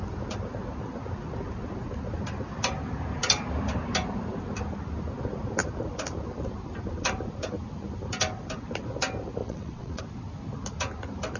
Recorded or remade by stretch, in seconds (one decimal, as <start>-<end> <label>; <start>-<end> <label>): 0.0-9.4 recorded; 9.4-10.0 remade; 10.0-11.4 recorded